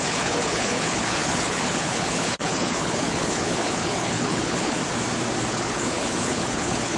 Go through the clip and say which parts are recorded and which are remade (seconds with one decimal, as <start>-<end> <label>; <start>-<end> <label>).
0.0-4.8 remade; 4.8-5.5 recorded; 5.5-7.0 remade